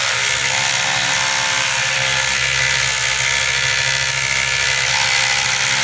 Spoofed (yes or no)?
no